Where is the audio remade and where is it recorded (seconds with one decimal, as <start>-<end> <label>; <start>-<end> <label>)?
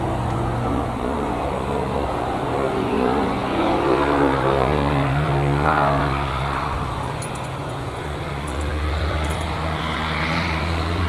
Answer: 0.0-11.1 remade